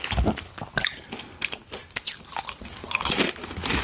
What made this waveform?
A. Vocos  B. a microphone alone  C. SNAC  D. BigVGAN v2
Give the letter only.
B